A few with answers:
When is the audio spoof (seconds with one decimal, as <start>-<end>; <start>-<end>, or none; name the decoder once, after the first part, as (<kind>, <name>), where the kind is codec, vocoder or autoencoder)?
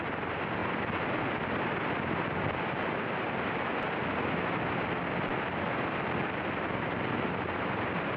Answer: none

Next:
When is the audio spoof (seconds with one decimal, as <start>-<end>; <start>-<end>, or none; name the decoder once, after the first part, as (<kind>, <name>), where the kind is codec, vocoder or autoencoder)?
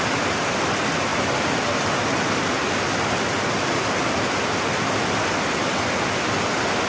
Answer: none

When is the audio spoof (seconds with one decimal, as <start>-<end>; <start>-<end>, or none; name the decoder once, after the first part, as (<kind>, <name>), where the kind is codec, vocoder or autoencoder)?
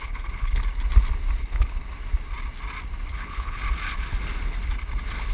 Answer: 0.0-0.6 (codec, HILCodec); 1.4-1.8; 3.1-3.6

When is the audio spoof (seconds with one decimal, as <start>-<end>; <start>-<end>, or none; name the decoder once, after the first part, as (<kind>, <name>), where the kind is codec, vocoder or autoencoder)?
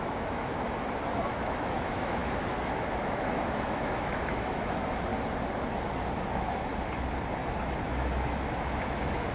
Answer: 0.0-0.5 (autoencoder, DAC-VAE); 1.1-5.1; 6.3-6.7; 7.6-9.3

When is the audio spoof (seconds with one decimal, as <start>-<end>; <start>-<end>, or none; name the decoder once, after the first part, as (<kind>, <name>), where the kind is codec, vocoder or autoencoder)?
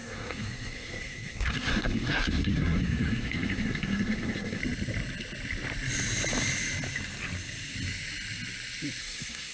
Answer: 0.0-4.6 (codec, SNAC); 9.0-9.5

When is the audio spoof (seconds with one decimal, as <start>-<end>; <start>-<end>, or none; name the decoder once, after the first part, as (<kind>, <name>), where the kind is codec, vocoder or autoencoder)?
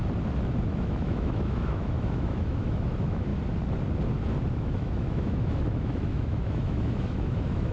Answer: 0.7-3.3 (autoencoder, DAC-VAE); 4.5-7.7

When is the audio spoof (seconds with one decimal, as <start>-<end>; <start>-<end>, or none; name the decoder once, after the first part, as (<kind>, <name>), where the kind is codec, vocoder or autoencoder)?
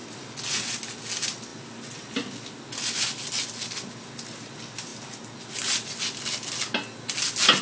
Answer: none